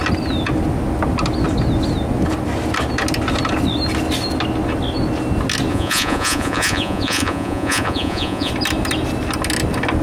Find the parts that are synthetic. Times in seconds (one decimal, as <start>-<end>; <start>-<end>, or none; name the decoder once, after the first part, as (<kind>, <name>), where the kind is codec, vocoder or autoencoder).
5.7-8.5 (vocoder, Vocos)